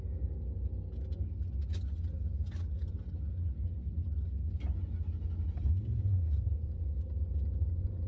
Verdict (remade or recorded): recorded